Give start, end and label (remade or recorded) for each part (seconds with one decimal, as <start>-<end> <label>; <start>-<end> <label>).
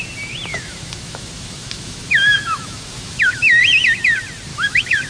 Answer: 0.0-0.5 recorded; 0.5-3.6 remade; 3.6-4.5 recorded; 4.5-5.1 remade